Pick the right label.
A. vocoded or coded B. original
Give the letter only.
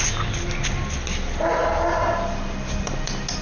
B